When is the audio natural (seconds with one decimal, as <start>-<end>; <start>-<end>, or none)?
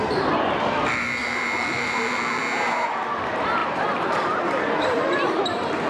0.0-1.2; 2.4-3.6; 5.4-5.9